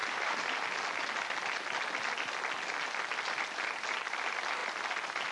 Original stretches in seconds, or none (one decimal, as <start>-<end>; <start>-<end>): 0.0-5.3